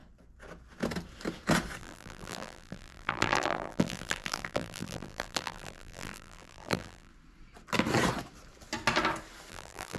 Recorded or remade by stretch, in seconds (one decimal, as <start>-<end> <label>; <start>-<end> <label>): 0.0-1.8 recorded; 1.8-7.1 remade; 7.1-9.5 recorded; 9.5-10.0 remade